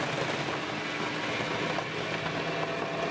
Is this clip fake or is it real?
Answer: real